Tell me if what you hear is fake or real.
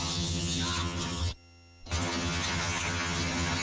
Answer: fake